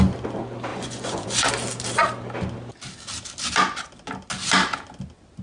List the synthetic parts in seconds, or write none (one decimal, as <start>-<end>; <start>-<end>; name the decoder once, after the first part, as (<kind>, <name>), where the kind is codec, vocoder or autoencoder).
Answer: 0.7-1.5 (vocoder, Vocos)